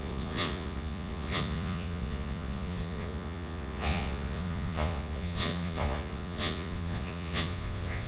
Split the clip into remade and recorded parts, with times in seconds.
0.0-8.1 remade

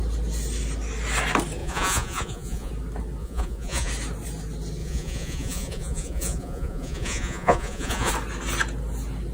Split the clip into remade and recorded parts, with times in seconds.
0.0-1.6 recorded; 1.6-2.7 remade; 2.7-3.2 recorded; 3.2-3.9 remade; 3.9-4.8 recorded; 4.8-8.1 remade; 8.1-9.3 recorded